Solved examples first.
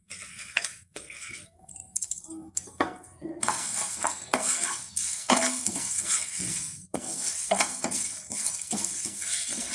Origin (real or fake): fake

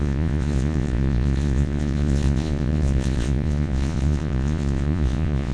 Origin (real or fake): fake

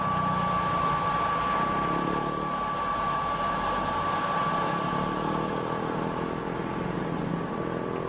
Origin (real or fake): real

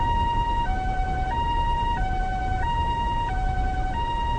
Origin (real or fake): real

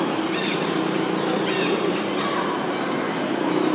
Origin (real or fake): real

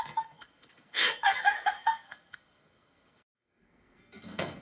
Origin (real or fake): fake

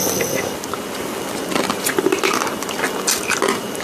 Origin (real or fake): real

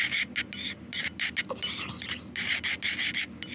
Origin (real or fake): real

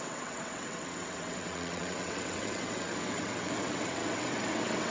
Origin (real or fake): fake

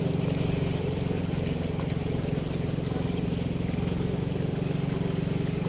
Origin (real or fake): real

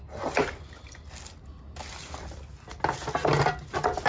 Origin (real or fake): real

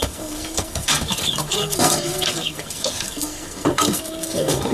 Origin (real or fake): fake